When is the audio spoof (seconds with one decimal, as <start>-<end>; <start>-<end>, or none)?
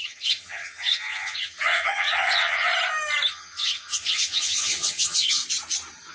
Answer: 0.0-2.7; 3.3-5.4